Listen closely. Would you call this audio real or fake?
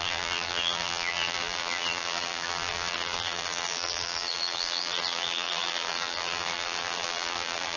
fake